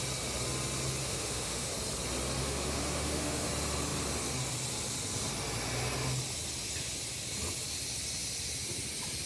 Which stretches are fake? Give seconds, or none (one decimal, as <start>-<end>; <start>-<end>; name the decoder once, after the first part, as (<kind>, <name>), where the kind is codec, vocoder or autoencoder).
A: 1.0-1.7 (autoencoder, DAC-VAE); 2.4-3.5